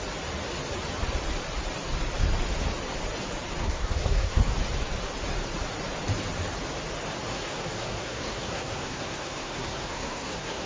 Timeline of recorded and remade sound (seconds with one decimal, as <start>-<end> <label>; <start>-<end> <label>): 0.0-3.6 recorded; 3.6-4.5 remade; 4.5-7.3 recorded; 7.3-10.7 remade